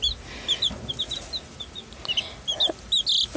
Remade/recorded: recorded